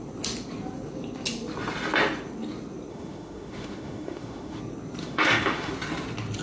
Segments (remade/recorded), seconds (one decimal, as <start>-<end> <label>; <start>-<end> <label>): 0.0-2.9 recorded; 2.9-4.6 remade; 4.6-5.0 recorded; 5.0-5.7 remade; 5.7-6.4 recorded